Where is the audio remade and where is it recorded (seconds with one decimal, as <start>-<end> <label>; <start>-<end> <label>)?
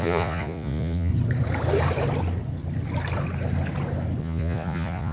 0.0-1.1 remade; 1.1-4.2 recorded; 4.2-5.1 remade